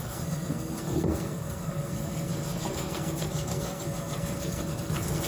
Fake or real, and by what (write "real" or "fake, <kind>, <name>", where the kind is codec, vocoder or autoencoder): fake, codec, SNAC